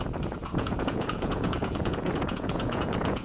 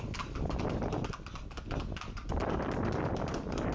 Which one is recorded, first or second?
second